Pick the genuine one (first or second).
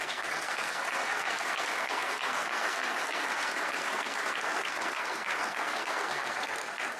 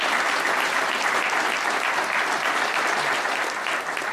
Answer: second